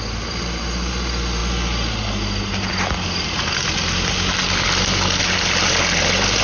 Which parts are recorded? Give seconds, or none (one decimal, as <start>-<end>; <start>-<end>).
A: 0.0-6.4